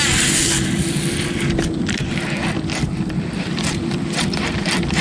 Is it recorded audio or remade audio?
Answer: recorded